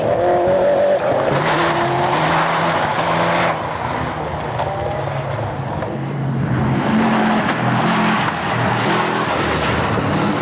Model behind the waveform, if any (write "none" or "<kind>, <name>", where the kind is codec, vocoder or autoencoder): none